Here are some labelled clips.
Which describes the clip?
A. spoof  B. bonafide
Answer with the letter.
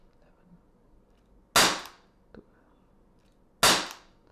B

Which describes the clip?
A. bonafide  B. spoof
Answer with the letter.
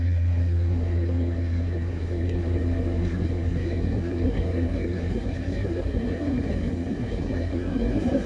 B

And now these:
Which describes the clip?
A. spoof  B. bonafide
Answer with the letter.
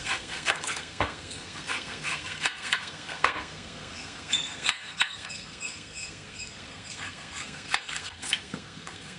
A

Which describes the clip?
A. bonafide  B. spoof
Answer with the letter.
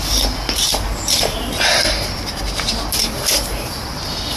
A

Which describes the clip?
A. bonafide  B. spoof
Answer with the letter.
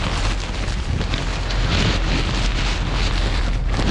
A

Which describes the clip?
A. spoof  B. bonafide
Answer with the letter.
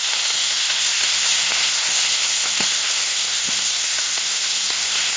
A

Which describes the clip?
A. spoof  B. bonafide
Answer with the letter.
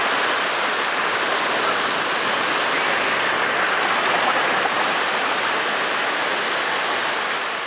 B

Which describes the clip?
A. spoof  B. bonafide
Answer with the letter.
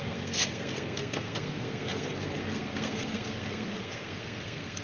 A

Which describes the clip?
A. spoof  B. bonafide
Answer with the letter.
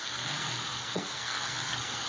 A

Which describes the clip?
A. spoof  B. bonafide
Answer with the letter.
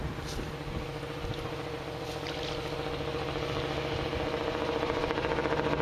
B